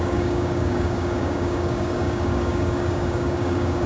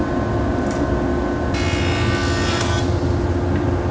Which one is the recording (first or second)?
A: second